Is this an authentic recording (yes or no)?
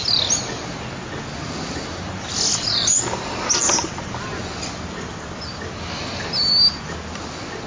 yes